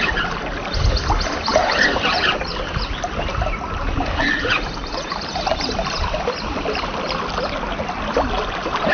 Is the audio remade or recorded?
recorded